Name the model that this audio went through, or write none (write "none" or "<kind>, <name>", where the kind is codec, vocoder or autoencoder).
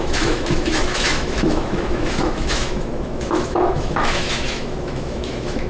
autoencoder, DAC-VAE